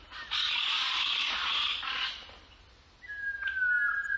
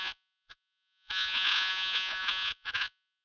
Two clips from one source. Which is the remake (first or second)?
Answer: second